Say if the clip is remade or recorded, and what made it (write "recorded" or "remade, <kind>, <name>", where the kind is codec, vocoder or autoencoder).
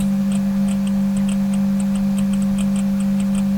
recorded